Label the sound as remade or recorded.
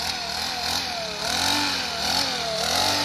recorded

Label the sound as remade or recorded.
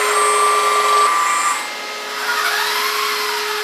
recorded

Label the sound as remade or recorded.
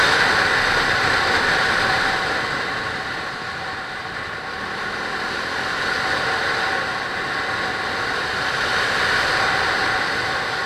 recorded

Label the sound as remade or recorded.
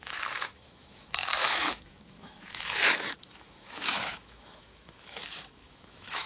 remade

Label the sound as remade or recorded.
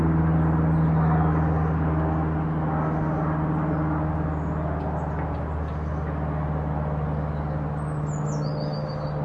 recorded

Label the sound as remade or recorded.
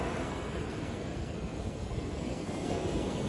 remade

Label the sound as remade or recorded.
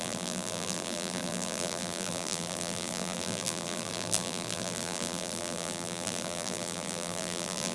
remade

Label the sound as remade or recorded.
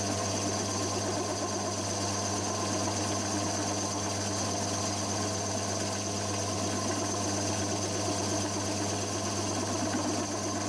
recorded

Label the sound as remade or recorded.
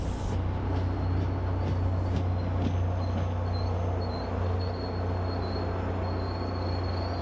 recorded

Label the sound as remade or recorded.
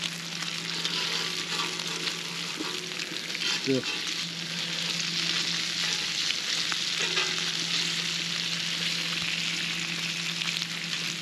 recorded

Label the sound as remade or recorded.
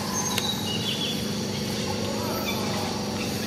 remade